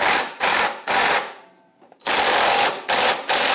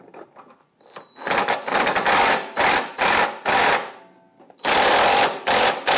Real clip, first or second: second